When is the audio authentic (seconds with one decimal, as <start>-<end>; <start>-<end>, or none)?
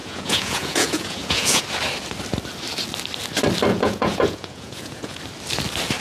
1.6-3.7; 5.2-6.0